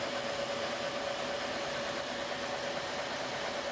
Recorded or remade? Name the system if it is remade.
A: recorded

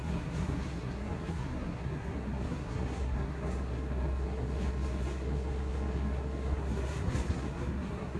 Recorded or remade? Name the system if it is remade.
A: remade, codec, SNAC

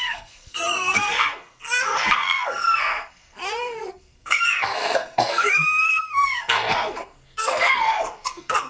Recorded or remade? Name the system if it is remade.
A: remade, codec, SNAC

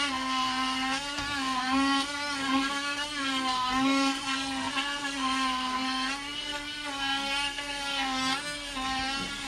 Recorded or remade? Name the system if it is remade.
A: remade, codec, SNAC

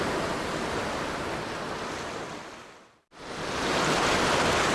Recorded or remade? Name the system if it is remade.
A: recorded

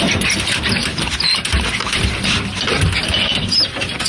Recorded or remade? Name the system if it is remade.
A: recorded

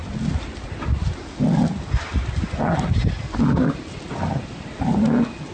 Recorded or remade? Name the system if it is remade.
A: recorded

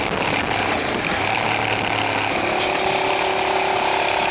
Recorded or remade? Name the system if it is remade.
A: recorded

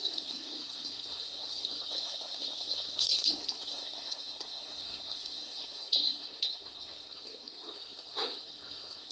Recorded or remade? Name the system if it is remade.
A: remade, codec, SNAC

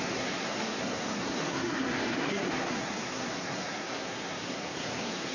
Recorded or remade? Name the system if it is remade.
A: remade, codec, SNAC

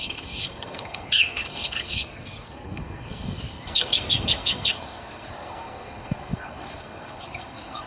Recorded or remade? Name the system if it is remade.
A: remade, codec, SNAC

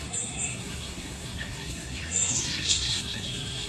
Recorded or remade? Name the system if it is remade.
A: remade, codec, SNAC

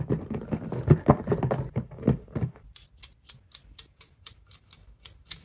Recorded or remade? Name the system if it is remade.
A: recorded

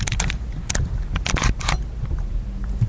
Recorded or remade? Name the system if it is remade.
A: recorded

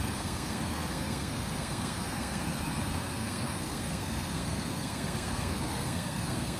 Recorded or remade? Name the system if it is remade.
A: remade, codec, SNAC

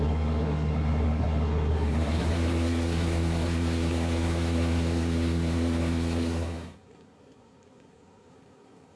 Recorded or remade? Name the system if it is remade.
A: remade, codec, SNAC